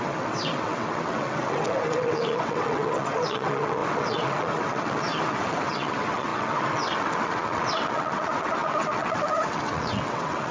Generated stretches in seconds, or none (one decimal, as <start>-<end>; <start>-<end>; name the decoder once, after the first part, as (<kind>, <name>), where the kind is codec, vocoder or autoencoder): 0.0-10.5 (vocoder, WaveNeXt)